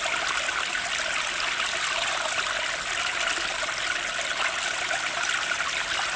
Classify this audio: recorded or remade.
recorded